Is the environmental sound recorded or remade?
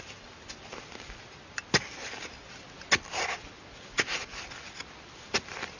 recorded